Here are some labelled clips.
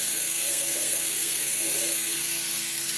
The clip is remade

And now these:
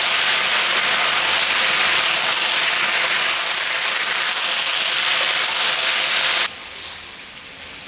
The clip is recorded